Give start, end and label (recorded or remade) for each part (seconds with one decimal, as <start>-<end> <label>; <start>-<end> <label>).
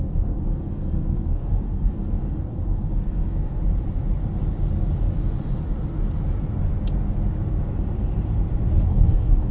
0.0-3.6 remade; 3.6-8.8 recorded; 8.8-9.5 remade